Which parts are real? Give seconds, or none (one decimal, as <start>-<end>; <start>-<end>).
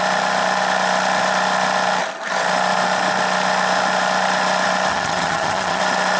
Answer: 0.0-4.9; 5.8-6.2